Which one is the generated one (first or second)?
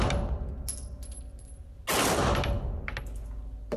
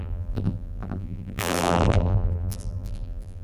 second